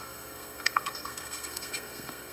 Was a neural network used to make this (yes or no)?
yes